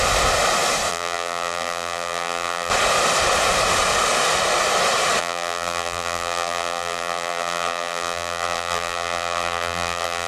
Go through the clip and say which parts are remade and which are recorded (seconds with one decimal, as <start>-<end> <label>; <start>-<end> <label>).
0.0-0.9 recorded; 0.9-2.7 remade; 2.7-5.2 recorded; 5.2-10.3 remade